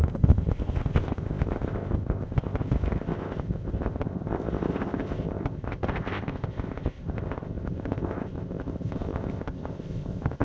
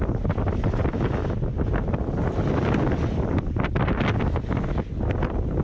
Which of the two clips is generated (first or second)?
first